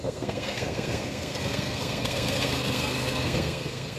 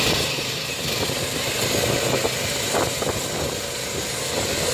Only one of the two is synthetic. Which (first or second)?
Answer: first